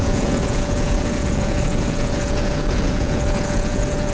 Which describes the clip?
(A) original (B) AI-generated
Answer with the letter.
B